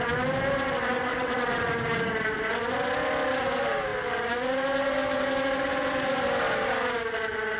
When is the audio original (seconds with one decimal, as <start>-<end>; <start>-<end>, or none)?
0.0-1.1; 1.7-7.6